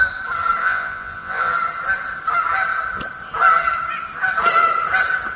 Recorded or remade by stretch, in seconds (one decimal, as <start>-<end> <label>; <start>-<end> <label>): 0.0-0.6 recorded; 0.6-1.5 remade; 1.5-5.4 recorded